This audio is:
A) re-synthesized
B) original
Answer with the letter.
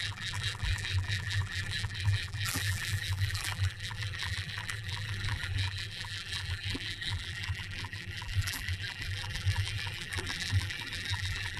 A